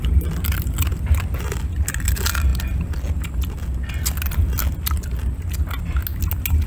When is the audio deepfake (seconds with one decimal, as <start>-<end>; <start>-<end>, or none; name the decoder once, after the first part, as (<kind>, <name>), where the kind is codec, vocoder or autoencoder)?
none